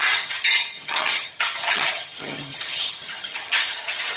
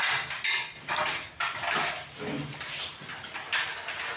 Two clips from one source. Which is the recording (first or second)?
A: second